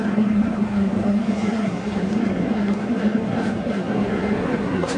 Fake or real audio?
fake